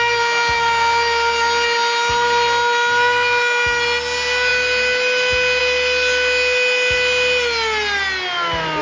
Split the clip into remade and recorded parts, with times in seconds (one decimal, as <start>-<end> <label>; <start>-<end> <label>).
0.0-8.8 recorded